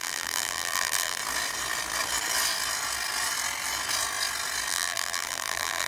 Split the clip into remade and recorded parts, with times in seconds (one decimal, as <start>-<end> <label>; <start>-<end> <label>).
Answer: 0.0-1.2 remade; 1.2-4.7 recorded; 4.7-5.9 remade